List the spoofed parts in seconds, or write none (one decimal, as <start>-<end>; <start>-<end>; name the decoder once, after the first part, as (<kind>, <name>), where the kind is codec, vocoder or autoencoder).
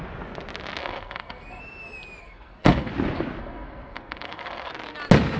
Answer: 0.8-1.6 (codec, SNAC); 2.2-2.9; 3.4-4.7